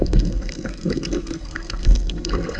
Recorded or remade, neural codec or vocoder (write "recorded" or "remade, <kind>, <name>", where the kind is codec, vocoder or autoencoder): remade, codec, SNAC